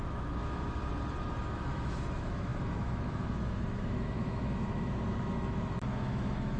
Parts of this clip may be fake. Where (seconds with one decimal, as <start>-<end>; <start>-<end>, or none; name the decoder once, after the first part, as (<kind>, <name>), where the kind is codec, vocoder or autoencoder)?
0.0-0.8 (autoencoder, DAC-VAE); 1.5-6.6